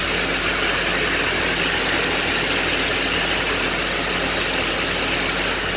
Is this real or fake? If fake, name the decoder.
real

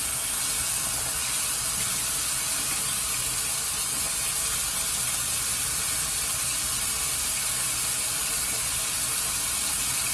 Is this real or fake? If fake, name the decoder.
real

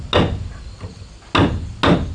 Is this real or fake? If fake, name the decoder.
real